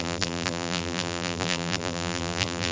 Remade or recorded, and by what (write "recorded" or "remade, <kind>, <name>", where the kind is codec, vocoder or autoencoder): remade, vocoder, BigVGAN v2